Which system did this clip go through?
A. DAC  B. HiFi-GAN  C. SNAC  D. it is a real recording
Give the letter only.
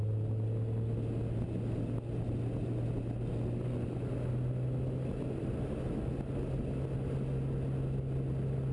D